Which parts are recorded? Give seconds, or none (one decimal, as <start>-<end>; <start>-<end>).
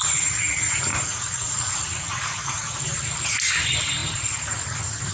0.0-0.9; 2.8-5.1